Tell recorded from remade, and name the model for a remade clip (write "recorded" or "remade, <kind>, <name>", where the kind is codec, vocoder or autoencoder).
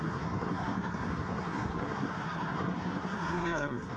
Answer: remade, codec, SNAC